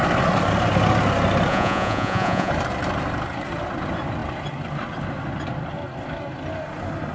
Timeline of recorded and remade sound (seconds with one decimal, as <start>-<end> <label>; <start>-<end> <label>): 0.0-1.5 recorded; 1.5-2.5 remade; 2.5-7.1 recorded